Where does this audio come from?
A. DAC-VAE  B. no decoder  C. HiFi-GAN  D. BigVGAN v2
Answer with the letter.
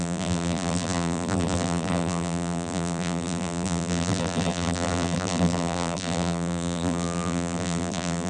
D